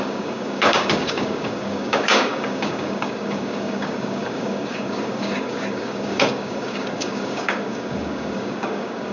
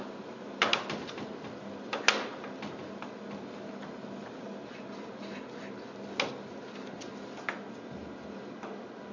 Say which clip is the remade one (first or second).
first